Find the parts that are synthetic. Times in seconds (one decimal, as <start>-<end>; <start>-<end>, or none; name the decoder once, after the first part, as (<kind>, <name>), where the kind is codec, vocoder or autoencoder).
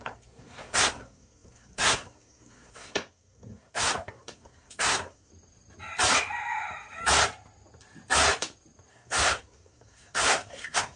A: 0.0-5.3 (codec, SNAC); 8.9-11.0